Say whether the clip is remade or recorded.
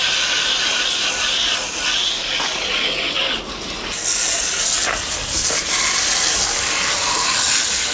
recorded